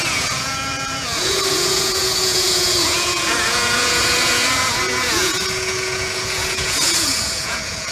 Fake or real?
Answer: fake